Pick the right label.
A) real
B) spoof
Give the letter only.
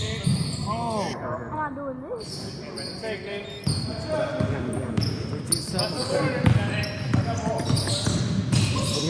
A